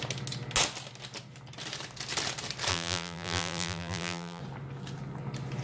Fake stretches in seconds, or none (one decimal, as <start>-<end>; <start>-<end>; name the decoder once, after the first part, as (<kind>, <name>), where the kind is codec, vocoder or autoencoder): 2.7-4.4 (vocoder, BigVGAN v2)